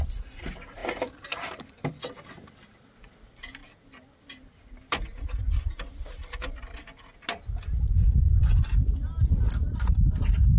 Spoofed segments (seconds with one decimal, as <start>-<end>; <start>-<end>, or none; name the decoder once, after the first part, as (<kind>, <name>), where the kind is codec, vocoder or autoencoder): 0.8-1.9 (vocoder, BigVGAN v2)